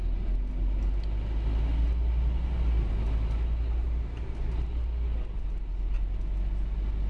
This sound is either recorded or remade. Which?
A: recorded